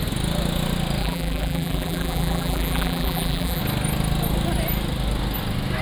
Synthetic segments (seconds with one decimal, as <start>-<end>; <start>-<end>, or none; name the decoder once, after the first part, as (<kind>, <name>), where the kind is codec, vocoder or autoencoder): 1.0-3.6 (vocoder, BigVGAN v2)